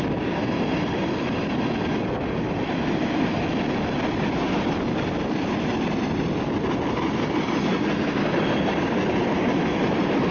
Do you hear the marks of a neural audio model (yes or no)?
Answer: no